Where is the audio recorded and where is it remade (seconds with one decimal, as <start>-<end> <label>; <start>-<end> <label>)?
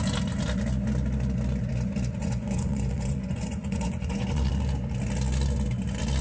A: 0.0-2.2 recorded; 2.2-4.5 remade; 4.5-6.2 recorded